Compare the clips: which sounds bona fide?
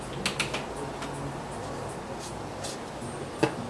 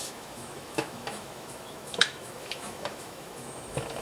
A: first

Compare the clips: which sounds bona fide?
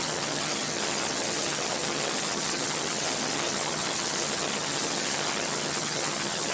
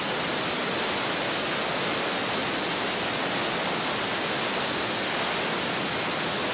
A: second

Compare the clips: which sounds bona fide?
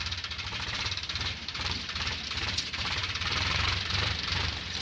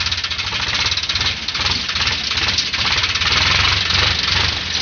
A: second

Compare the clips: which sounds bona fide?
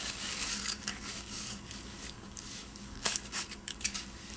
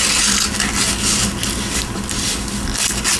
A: second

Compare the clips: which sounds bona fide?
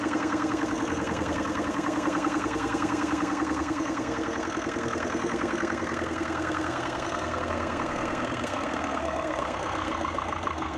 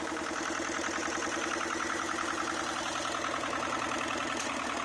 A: second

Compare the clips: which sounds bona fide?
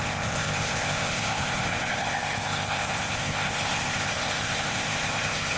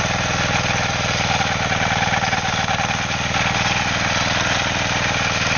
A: second